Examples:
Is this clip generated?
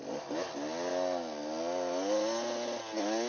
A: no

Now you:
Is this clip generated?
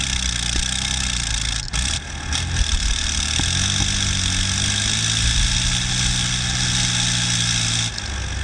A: no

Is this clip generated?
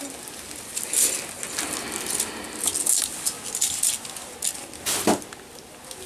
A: no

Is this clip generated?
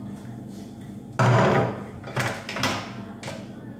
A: no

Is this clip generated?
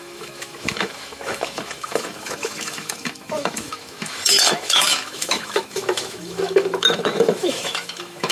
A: yes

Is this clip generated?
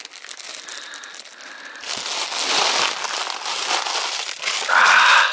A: no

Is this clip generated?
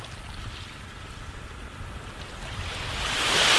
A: no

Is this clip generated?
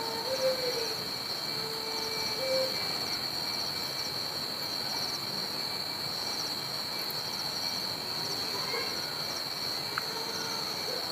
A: no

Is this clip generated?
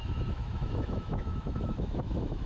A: yes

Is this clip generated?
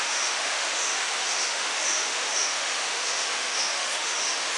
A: yes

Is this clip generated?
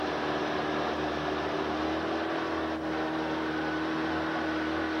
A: no